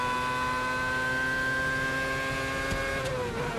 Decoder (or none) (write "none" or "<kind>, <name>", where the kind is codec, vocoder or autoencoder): none